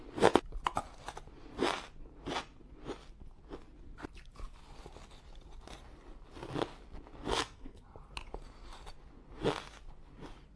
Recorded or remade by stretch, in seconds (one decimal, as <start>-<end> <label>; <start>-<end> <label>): 0.0-7.3 recorded; 7.3-7.8 remade; 7.8-10.6 recorded